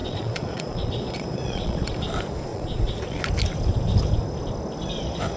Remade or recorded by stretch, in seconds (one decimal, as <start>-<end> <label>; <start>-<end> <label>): 0.0-1.9 remade; 1.9-2.5 recorded; 2.5-3.2 remade; 3.2-5.4 recorded